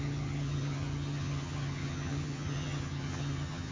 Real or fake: fake